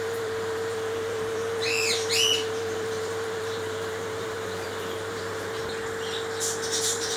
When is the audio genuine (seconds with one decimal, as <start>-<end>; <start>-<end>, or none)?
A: 5.6-6.8